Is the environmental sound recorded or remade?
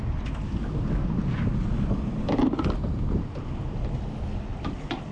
recorded